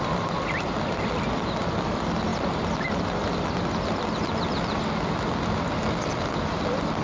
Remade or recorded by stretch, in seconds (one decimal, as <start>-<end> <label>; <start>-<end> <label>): 0.0-7.0 recorded